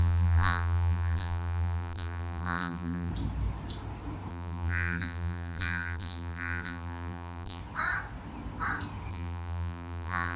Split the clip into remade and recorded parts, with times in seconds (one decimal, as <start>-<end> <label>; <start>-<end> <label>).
0.0-3.1 remade; 3.1-4.3 recorded; 4.3-7.6 remade; 7.6-9.1 recorded; 9.1-10.4 remade